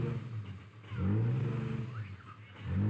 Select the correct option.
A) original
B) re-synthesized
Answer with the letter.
A